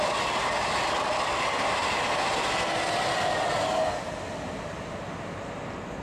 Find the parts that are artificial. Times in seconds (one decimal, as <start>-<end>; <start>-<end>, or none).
none